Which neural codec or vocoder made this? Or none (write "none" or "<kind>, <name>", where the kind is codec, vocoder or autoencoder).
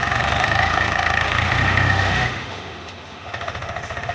autoencoder, DAC-VAE